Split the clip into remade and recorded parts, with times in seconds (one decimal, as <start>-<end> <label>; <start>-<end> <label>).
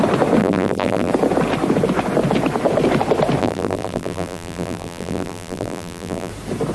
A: 0.0-0.4 recorded; 0.4-1.1 remade; 1.1-3.4 recorded; 3.4-6.3 remade; 6.3-6.7 recorded